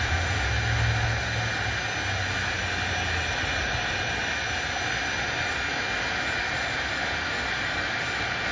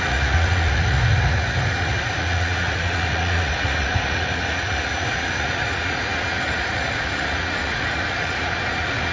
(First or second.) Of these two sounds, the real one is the first